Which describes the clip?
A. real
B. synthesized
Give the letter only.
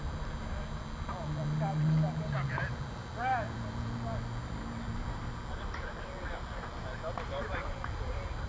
B